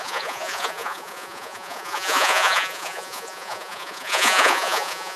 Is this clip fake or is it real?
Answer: fake